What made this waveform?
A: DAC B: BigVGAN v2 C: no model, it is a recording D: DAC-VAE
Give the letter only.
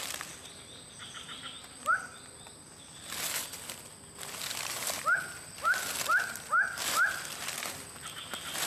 C